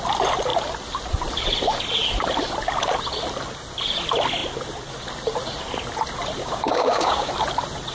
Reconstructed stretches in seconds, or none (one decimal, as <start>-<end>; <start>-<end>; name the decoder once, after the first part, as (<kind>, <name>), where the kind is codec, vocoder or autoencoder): 6.4-7.3 (codec, DAC)